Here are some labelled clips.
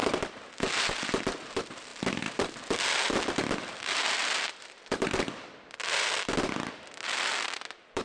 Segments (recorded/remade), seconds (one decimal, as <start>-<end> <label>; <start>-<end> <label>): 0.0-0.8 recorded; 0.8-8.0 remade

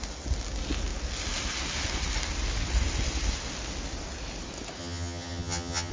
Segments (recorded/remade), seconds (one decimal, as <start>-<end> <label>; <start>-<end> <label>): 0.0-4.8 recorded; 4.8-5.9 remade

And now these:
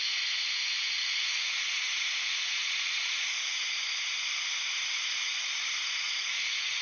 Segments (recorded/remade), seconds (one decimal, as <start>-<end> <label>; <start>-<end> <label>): 0.0-3.6 remade; 3.6-5.9 recorded; 5.9-6.8 remade

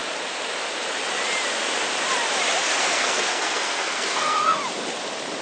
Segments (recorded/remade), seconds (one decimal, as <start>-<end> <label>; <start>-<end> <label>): 0.0-2.8 recorded; 2.8-4.6 remade; 4.6-5.4 recorded